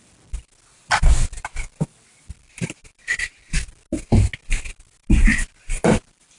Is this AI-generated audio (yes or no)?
no